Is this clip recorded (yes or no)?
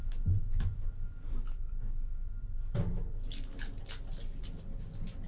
yes